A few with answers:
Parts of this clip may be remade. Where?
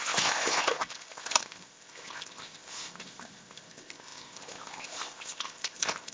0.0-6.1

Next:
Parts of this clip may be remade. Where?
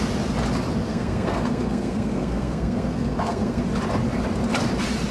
0.9-3.6